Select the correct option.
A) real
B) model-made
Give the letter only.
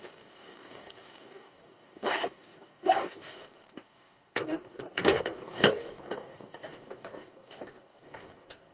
B